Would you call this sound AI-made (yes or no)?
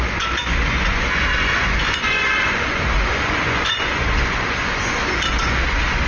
yes